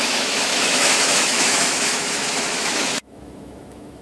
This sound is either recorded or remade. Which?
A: remade